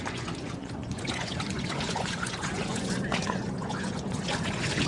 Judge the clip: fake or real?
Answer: fake